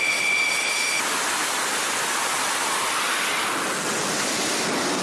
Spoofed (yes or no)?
no